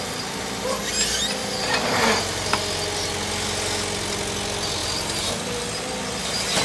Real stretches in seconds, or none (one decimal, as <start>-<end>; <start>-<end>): 0.0-1.4; 2.5-4.8; 5.3-6.6